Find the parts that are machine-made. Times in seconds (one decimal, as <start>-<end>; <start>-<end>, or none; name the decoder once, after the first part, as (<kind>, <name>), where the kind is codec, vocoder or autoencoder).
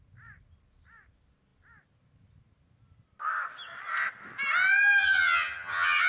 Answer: 5.0-6.1 (vocoder, HiFi-GAN)